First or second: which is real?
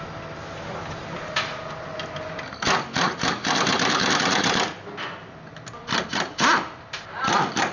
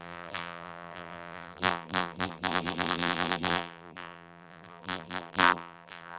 first